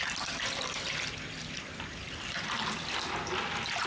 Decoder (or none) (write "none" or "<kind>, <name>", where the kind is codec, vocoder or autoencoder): none